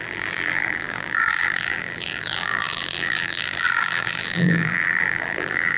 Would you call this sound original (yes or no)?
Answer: no